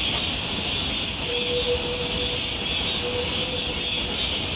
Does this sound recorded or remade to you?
recorded